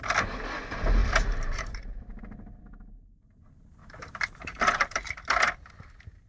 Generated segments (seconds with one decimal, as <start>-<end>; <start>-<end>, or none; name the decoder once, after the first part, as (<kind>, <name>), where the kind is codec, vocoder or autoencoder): 1.0-2.2 (vocoder, BigVGAN v2); 3.8-5.7